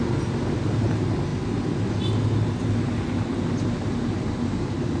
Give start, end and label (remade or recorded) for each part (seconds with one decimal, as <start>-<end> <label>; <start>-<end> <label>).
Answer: 0.0-5.0 recorded